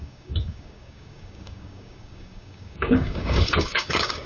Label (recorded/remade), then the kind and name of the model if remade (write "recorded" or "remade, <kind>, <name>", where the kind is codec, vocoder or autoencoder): remade, codec, DAC